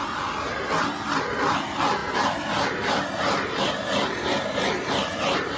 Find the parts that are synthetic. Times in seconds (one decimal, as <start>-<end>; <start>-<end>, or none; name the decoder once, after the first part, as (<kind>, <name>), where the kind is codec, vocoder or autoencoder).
none